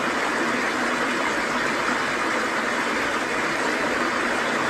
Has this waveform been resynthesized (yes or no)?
no